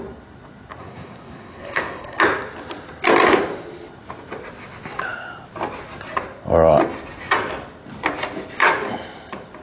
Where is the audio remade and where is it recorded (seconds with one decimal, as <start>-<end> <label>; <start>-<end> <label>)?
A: 0.0-0.8 recorded; 0.8-2.2 remade; 2.2-9.6 recorded